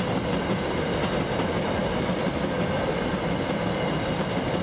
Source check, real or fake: real